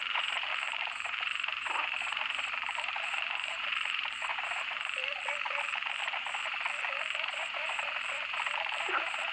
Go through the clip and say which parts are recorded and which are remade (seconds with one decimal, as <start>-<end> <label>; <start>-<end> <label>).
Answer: 0.0-5.0 remade; 5.0-6.0 recorded; 6.0-6.4 remade; 6.4-7.3 recorded; 7.3-9.3 remade